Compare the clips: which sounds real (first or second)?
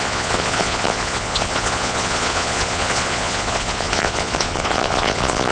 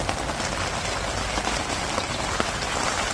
second